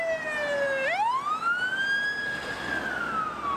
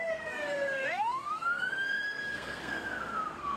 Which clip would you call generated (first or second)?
second